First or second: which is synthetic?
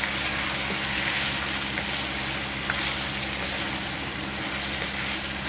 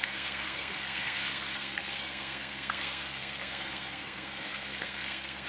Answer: second